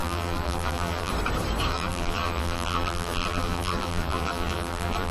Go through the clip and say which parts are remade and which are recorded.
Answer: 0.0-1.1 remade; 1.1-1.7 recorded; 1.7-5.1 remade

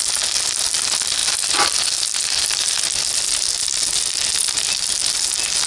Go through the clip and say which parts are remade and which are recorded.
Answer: 0.0-5.7 recorded

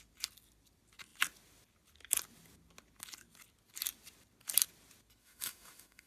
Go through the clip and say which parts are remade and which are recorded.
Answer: 0.0-5.2 recorded; 5.2-6.1 remade

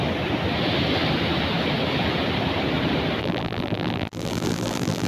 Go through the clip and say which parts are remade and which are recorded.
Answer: 0.0-3.2 recorded; 3.2-5.1 remade

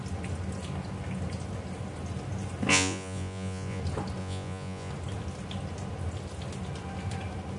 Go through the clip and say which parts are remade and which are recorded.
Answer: 0.0-2.7 recorded; 2.7-3.8 remade; 3.8-4.2 recorded; 4.2-4.9 remade; 4.9-7.6 recorded

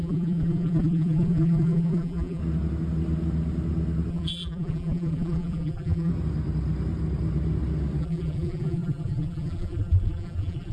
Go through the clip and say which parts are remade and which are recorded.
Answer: 0.0-2.4 remade; 2.4-4.1 recorded; 4.1-6.1 remade; 6.1-8.0 recorded; 8.0-10.7 remade

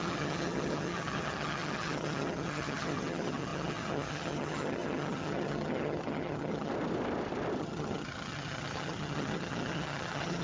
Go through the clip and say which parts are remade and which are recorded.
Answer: 0.0-6.7 remade; 6.7-7.6 recorded; 7.6-10.4 remade